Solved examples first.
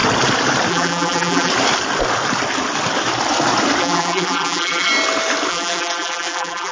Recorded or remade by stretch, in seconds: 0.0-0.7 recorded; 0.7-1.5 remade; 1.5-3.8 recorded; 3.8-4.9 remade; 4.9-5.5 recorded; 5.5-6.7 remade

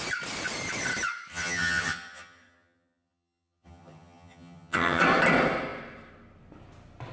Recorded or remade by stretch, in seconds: 0.0-1.3 recorded; 1.3-5.0 remade; 5.0-7.1 recorded

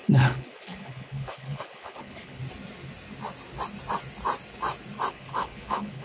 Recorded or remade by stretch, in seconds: 0.0-2.4 remade; 2.4-5.1 recorded; 5.1-6.0 remade

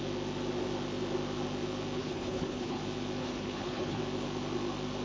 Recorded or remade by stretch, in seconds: 0.0-2.0 recorded; 2.0-2.8 remade; 2.8-3.2 recorded; 3.2-4.0 remade; 4.0-5.0 recorded

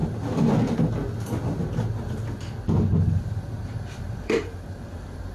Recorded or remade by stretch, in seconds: 0.0-3.2 recorded; 3.2-5.3 remade

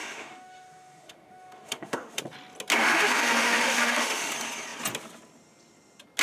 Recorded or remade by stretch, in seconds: 0.0-2.2 remade; 2.2-2.8 recorded; 2.8-4.3 remade; 4.3-6.2 recorded

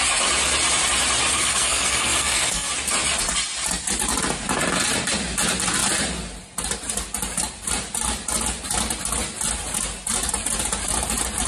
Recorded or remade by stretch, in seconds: 0.0-1.3 recorded; 1.3-2.7 remade; 2.7-11.5 recorded

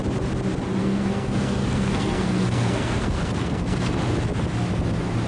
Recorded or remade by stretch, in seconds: 0.0-0.8 recorded; 0.8-4.0 remade; 4.0-5.3 recorded